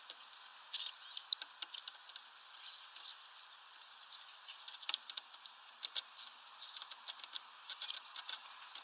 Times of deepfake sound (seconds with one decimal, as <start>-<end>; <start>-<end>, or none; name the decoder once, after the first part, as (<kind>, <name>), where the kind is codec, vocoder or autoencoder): none